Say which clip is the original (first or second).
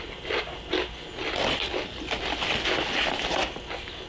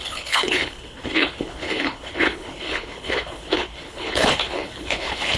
first